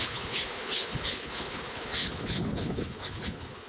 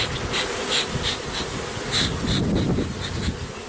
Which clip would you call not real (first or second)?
first